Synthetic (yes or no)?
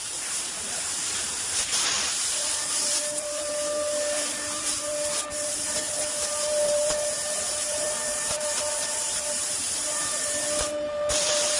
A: yes